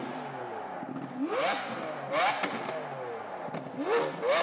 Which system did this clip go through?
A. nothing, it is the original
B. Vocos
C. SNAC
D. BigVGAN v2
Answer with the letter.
A